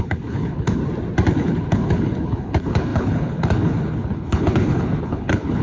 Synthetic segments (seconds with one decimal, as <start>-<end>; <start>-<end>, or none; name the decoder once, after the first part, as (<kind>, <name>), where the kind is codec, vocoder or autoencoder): 0.0-0.8 (codec, HILCodec); 1.3-5.6